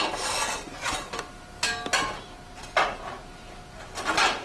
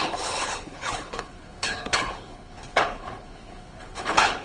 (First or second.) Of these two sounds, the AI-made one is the second